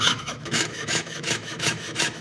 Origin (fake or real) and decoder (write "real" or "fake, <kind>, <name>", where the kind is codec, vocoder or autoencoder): fake, autoencoder, DAC-VAE